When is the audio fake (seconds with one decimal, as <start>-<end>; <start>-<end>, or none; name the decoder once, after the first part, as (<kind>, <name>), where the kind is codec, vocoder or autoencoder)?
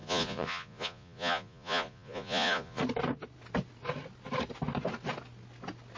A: 0.0-2.8 (vocoder, Vocos)